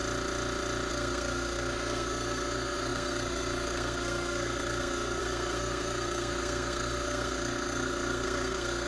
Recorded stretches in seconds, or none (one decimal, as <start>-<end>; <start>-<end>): 0.0-0.9

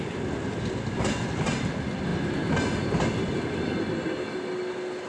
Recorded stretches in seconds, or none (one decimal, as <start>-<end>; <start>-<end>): 0.0-5.1

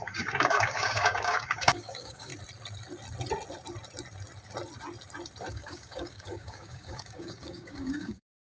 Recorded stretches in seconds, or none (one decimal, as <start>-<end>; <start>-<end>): 2.3-5.5

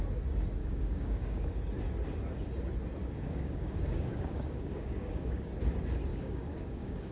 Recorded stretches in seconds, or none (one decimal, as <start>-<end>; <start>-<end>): 0.0-0.6; 1.5-3.0; 5.5-6.1

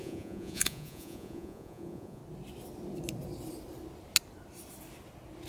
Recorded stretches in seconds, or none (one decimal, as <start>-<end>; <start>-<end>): 2.2-5.5